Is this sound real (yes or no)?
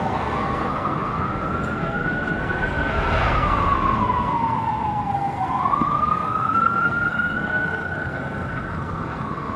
no